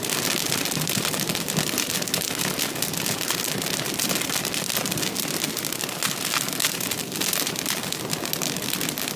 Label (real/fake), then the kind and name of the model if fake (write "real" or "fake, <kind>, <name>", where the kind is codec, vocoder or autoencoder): real